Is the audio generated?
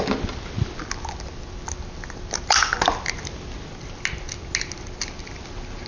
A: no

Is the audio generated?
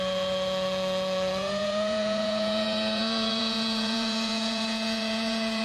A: yes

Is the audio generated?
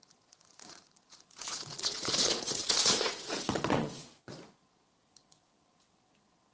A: yes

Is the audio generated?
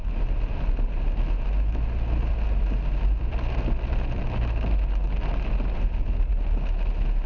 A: no